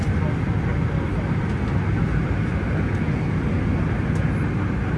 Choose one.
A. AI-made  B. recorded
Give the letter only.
B